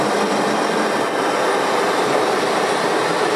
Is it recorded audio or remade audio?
recorded